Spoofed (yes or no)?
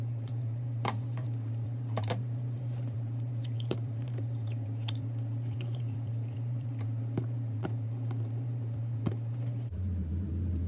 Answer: yes